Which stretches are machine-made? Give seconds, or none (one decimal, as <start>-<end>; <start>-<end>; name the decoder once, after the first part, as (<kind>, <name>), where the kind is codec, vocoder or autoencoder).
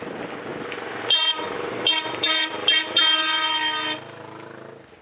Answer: 0.5-3.5 (vocoder, BigVGAN v2)